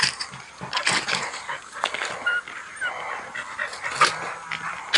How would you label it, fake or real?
real